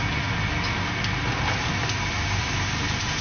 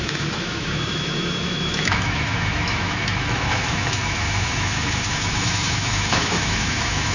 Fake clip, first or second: second